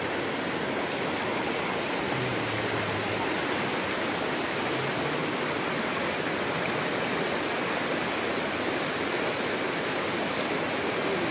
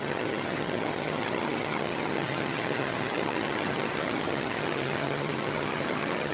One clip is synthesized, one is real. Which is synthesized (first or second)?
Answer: second